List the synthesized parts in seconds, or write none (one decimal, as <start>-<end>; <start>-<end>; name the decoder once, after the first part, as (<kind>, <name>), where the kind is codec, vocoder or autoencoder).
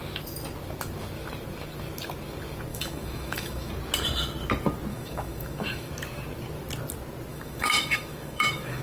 2.7-3.7 (autoencoder, DAC-VAE); 4.9-5.9; 7.3-8.8